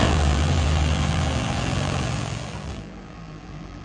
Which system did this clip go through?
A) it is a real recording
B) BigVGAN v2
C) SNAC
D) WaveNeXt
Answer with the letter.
B